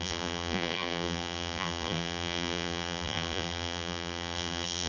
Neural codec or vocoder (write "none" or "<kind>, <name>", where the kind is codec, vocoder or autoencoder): vocoder, BigVGAN v2